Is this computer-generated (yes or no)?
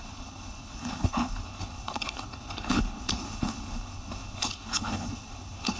yes